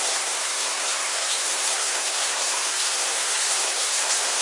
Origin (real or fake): fake